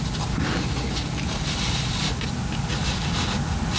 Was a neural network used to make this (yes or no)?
no